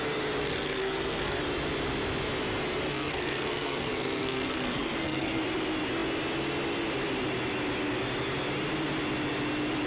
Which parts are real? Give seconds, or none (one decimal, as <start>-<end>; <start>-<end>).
0.0-0.4; 1.4-2.9; 5.4-9.9